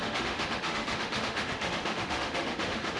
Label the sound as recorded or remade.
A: remade